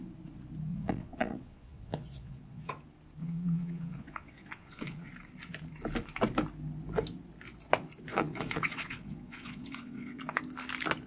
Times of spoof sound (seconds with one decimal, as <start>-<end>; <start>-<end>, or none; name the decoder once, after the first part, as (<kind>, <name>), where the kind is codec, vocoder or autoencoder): 0.7-2.7 (vocoder, Vocos); 3.2-5.1; 8.1-10.4